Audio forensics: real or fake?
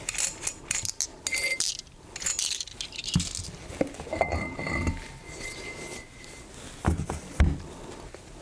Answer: real